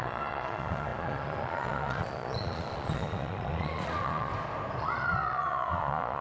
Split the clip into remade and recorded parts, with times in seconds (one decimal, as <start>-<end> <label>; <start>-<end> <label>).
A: 0.0-4.3 remade; 4.3-4.8 recorded; 4.8-6.2 remade